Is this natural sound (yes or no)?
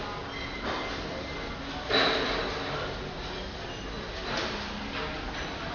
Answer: yes